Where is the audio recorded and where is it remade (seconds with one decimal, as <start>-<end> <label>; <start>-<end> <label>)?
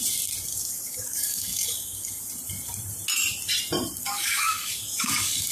0.0-0.5 recorded; 0.5-2.3 remade; 2.3-4.0 recorded; 4.0-5.5 remade